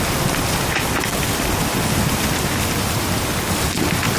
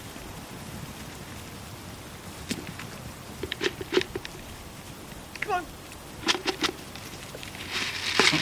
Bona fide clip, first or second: first